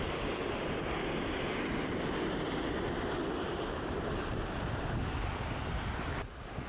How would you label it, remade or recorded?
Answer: recorded